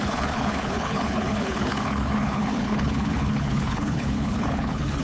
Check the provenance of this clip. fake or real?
fake